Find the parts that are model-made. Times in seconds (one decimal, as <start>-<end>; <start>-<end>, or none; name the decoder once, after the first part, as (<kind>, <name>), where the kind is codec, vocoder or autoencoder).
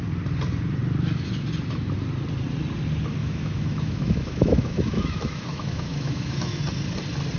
3.2-6.6 (autoencoder, DAC-VAE)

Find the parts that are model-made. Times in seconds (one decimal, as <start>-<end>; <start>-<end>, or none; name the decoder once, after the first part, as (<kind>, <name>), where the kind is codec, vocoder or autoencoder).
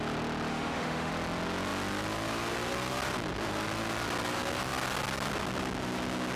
0.5-1.1 (autoencoder, DAC-VAE)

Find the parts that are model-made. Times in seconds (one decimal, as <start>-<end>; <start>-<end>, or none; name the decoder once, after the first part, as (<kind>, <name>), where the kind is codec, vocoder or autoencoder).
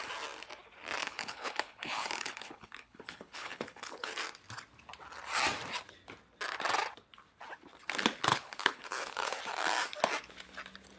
1.0-4.1 (codec, HILCodec); 8.3-9.4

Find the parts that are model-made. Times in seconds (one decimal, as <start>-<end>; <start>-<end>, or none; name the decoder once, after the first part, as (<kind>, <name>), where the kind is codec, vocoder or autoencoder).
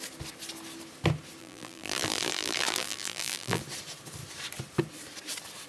1.4-3.6 (vocoder, BigVGAN v2)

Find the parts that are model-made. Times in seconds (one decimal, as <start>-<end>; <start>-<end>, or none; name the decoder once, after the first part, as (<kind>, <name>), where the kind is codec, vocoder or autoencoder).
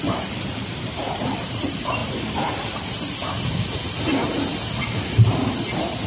0.0-2.0 (vocoder, BigVGAN v2)